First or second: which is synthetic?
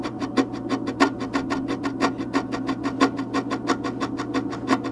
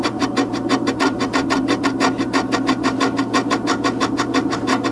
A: second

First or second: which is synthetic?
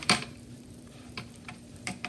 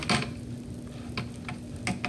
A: first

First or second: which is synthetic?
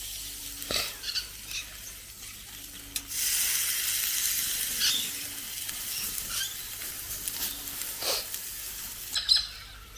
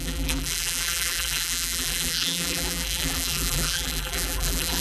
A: second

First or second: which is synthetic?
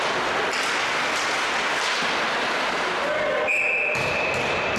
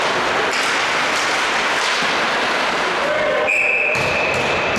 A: second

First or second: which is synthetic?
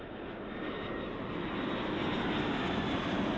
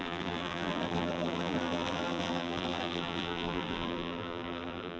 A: second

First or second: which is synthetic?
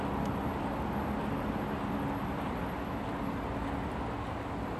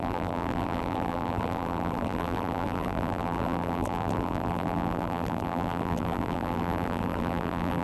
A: second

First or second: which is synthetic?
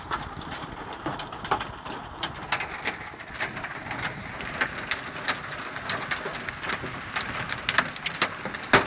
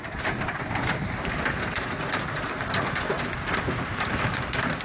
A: second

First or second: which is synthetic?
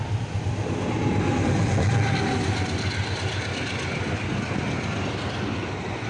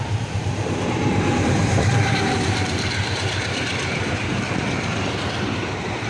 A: second